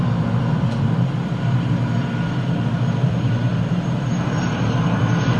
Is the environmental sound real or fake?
fake